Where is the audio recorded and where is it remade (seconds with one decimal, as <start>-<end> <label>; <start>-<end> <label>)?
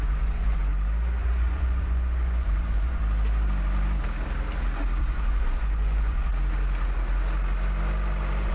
0.0-0.7 remade; 0.7-1.2 recorded; 1.2-3.0 remade; 3.0-5.0 recorded; 5.0-6.3 remade; 6.3-8.5 recorded